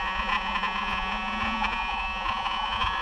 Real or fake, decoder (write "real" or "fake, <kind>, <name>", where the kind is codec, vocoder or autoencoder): fake, vocoder, Vocos